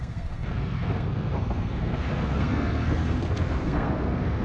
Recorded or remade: remade